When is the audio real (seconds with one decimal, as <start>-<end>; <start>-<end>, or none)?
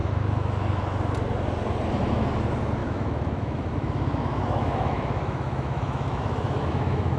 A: 0.8-2.8